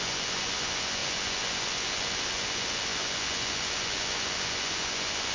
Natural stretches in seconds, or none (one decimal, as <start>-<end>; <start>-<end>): none